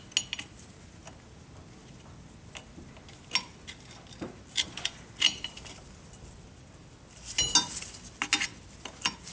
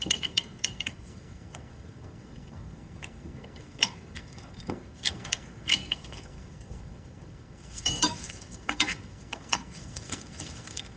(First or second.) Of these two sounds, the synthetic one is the second